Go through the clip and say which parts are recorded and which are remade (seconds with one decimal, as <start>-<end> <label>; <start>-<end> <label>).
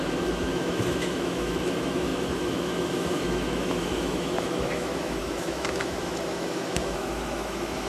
0.0-7.9 remade